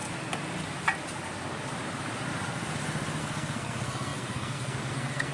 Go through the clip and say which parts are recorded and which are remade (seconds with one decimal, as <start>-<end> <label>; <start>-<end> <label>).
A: 0.0-3.2 recorded; 3.2-5.3 remade